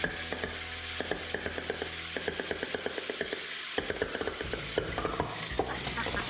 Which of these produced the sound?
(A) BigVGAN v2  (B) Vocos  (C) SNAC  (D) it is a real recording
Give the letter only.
D